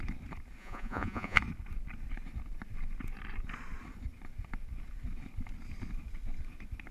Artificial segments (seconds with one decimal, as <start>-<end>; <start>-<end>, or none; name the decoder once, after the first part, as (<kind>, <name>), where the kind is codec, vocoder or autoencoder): 0.6-1.4 (vocoder, Vocos)